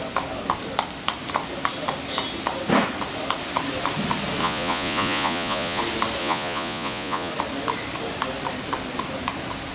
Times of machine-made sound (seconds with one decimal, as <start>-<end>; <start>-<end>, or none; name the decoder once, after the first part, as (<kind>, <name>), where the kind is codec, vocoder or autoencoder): 4.4-5.8 (vocoder, Vocos); 6.2-7.3